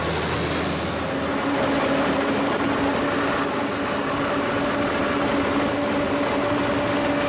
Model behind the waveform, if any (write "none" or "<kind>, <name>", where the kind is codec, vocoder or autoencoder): none